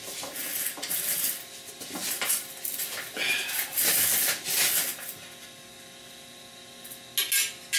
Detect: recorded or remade recorded